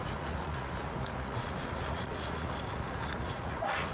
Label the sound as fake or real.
fake